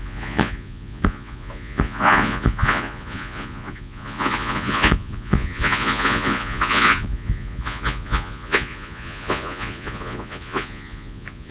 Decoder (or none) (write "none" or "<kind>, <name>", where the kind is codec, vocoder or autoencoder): vocoder, Vocos